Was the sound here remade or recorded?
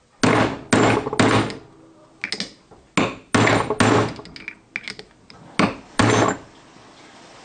recorded